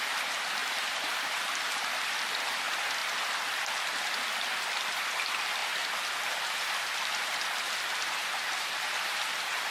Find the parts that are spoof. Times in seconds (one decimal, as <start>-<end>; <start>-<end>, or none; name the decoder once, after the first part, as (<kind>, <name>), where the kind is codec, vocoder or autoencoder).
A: 0.0-3.0 (vocoder, BigVGAN v2); 4.6-5.6; 6.5-9.7